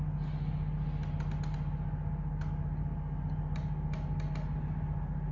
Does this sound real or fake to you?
real